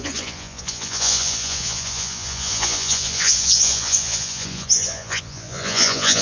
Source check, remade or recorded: remade